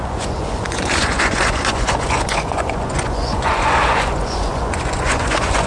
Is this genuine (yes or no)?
no